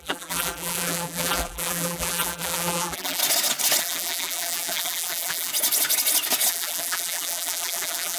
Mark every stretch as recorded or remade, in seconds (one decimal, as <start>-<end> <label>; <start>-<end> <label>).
0.0-3.2 remade; 3.2-3.8 recorded; 3.8-5.5 remade; 5.5-6.5 recorded; 6.5-8.2 remade

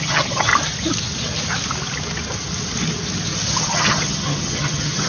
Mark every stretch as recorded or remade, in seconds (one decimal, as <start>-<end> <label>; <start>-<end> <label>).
0.0-0.5 remade; 0.5-3.6 recorded; 3.6-5.1 remade

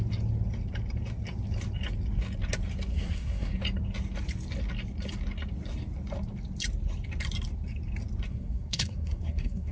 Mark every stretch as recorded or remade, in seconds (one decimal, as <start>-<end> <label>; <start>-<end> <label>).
0.0-2.9 recorded; 2.9-3.6 remade; 3.6-8.3 recorded; 8.3-9.7 remade

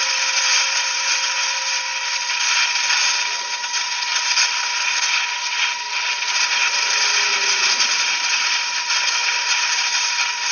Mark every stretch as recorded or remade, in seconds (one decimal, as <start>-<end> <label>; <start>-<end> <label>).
0.0-1.9 remade; 1.9-3.5 recorded; 3.5-4.1 remade; 4.1-6.2 recorded; 6.2-10.5 remade

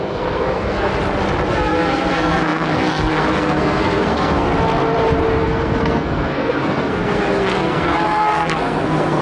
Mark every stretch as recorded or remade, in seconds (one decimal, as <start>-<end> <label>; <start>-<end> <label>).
0.0-0.9 remade; 0.9-1.5 recorded; 1.5-4.5 remade; 4.5-5.4 recorded; 5.4-9.2 remade

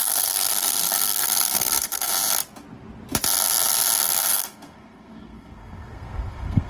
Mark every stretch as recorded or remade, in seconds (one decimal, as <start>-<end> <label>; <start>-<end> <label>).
0.0-2.1 remade; 2.1-4.3 recorded; 4.3-6.7 remade

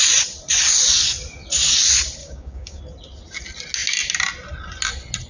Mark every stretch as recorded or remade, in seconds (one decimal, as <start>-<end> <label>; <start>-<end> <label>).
0.0-2.2 recorded; 2.2-2.8 remade; 2.8-5.3 recorded